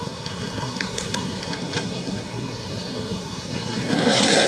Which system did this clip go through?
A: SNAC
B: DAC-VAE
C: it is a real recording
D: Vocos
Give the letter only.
A